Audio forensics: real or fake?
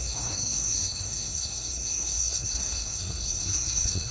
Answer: fake